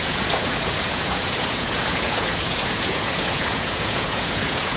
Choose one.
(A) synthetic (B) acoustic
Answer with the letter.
A